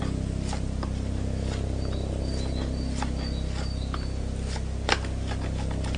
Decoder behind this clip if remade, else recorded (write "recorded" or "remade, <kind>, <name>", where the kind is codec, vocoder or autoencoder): recorded